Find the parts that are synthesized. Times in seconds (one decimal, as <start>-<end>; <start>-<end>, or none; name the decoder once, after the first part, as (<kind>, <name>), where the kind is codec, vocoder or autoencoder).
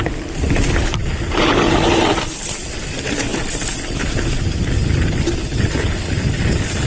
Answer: 0.0-6.9 (vocoder, BigVGAN v2)